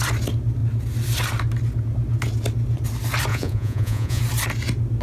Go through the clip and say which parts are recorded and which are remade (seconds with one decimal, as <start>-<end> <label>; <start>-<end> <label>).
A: 0.0-3.3 recorded; 3.3-4.2 remade; 4.2-5.0 recorded